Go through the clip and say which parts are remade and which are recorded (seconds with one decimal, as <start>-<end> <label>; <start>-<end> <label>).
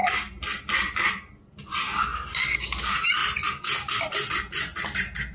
0.0-5.3 recorded